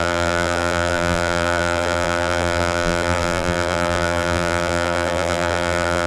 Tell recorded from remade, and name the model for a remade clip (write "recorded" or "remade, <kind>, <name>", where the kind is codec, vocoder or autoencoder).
remade, vocoder, BigVGAN v2